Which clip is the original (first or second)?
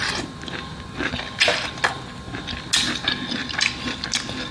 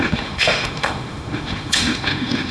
first